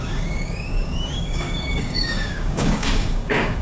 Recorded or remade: remade